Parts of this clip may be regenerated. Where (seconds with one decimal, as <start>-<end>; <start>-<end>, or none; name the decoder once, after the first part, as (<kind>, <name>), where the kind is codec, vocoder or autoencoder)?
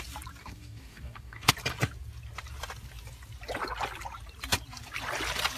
0.4-1.5 (codec, DAC)